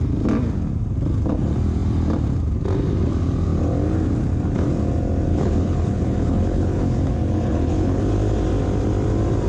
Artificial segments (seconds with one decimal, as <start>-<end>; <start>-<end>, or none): 5.3-8.0